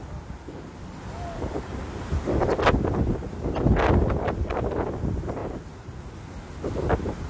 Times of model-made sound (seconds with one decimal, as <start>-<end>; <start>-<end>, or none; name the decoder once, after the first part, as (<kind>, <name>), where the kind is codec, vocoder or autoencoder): 5.4-6.0 (vocoder, BigVGAN v2)